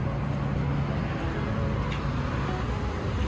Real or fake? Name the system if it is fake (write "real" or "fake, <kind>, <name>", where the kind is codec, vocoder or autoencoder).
real